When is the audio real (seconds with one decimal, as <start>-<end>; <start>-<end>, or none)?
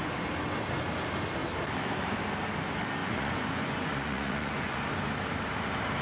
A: 0.0-3.0; 4.9-6.0